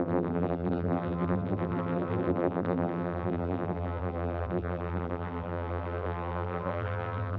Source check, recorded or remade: remade